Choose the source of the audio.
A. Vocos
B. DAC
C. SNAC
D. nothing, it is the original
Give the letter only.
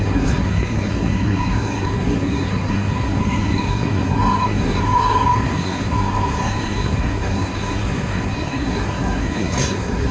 C